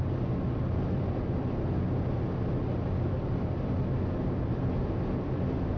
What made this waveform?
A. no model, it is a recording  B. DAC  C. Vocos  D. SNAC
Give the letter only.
A